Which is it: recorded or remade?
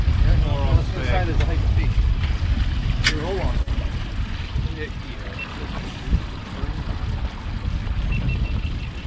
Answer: recorded